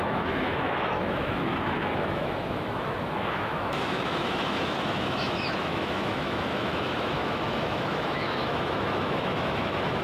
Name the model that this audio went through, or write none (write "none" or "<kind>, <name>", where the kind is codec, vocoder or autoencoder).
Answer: autoencoder, DAC-VAE